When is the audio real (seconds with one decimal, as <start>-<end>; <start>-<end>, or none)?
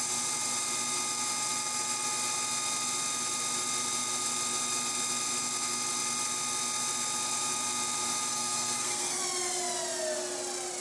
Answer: 0.0-8.3; 9.2-10.8